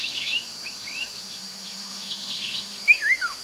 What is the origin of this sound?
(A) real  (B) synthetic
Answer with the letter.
B